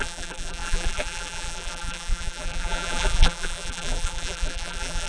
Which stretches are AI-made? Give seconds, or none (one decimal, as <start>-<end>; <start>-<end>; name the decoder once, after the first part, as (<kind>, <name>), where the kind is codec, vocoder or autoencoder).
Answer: 0.0-5.1 (vocoder, BigVGAN v2)